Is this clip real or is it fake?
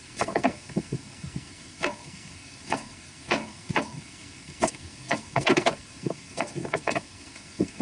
fake